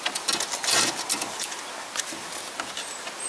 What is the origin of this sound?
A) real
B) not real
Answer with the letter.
A